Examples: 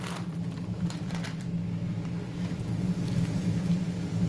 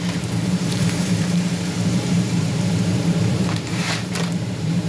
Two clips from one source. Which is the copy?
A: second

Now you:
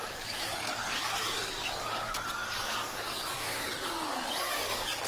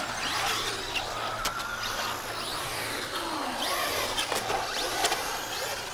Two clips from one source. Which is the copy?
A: first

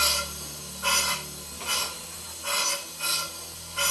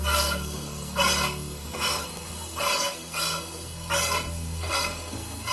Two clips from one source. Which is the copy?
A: second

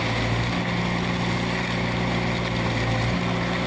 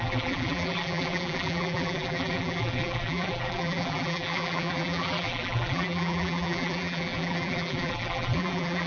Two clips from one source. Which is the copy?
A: second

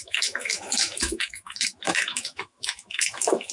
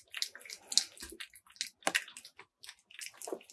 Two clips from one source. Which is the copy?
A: first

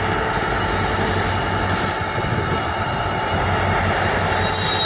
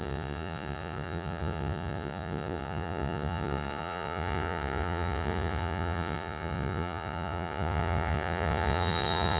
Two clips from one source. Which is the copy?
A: second